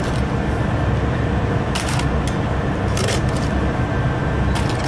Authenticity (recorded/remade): recorded